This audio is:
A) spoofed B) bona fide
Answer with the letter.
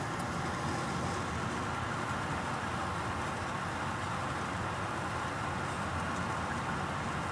B